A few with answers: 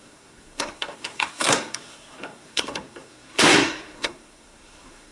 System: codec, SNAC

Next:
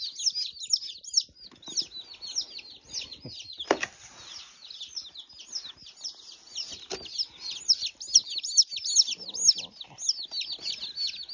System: none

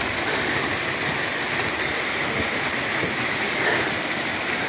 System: none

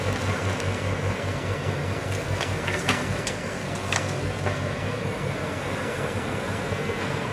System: codec, SNAC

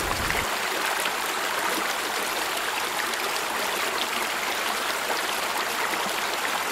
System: none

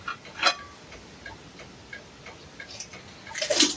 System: vocoder, BigVGAN v2